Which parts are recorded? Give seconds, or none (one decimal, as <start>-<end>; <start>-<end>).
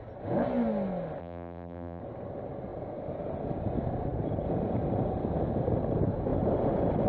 0.0-1.2; 2.0-7.1